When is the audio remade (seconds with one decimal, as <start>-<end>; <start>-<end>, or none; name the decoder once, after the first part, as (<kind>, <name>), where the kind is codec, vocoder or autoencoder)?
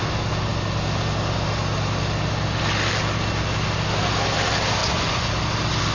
4.8-5.3 (vocoder, Vocos)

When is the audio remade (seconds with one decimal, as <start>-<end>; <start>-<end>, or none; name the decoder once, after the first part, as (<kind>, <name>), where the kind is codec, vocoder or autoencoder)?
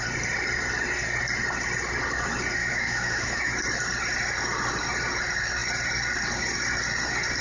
2.6-3.5 (autoencoder, DAC-VAE)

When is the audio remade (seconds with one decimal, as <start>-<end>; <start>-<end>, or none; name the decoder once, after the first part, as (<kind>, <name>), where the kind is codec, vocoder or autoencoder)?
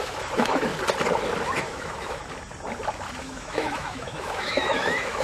0.0-0.7 (autoencoder, DAC-VAE); 1.4-2.2; 3.2-5.2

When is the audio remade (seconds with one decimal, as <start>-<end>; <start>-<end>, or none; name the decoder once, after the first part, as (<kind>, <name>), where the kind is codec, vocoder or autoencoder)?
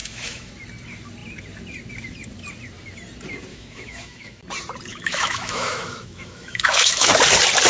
0.0-0.5 (autoencoder, DAC-VAE); 3.5-4.4; 4.9-7.1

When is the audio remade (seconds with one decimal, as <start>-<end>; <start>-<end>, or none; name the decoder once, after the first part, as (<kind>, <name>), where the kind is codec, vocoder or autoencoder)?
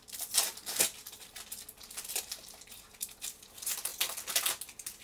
none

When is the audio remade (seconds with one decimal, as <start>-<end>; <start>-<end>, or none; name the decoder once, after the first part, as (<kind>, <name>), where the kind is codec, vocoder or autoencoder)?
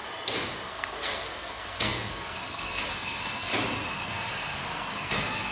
0.7-3.5 (codec, SNAC); 4.0-5.5